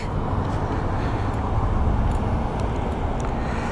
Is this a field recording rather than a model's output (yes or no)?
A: yes